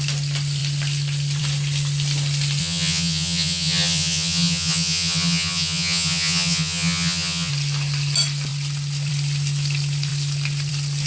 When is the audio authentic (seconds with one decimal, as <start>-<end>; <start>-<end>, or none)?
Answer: 0.0-2.6; 7.5-11.1